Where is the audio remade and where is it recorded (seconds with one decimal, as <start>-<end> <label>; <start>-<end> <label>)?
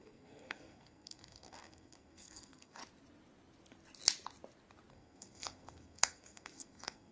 0.0-2.8 remade; 2.8-4.9 recorded; 4.9-7.1 remade